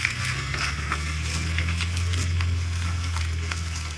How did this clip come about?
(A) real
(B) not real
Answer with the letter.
B